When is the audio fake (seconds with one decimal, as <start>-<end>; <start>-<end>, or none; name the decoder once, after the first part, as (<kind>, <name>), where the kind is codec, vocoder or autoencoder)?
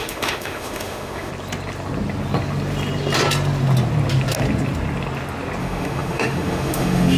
0.0-1.3 (autoencoder, DAC-VAE); 5.6-7.2